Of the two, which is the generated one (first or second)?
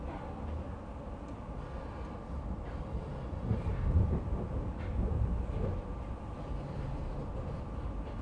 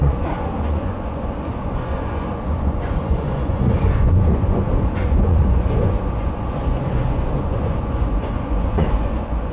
second